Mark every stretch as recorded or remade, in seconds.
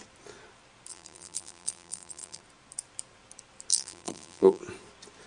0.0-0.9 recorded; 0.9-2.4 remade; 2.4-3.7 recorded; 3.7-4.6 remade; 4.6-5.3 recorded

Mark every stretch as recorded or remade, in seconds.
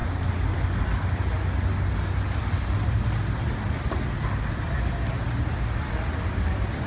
0.0-6.9 recorded